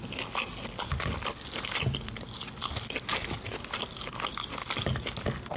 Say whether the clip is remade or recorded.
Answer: recorded